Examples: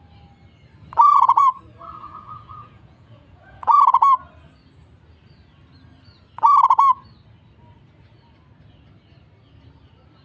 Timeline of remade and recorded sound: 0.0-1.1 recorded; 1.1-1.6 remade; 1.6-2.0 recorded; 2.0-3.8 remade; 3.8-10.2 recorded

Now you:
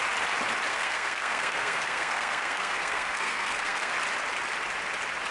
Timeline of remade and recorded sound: 0.0-0.7 recorded; 0.7-3.9 remade; 3.9-5.3 recorded